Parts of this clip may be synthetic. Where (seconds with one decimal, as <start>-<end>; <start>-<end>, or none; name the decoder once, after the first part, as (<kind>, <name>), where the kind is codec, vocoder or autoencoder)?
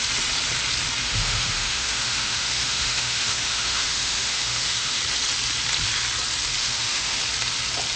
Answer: 1.0-5.0 (autoencoder, DAC-VAE); 6.6-7.2